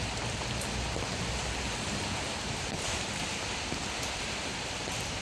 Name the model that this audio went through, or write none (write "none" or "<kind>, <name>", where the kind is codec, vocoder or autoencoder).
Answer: none